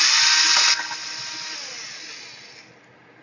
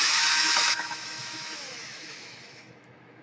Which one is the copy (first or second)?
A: second